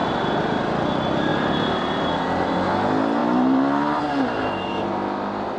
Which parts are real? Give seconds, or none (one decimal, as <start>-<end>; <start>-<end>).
0.6-3.2; 4.1-5.6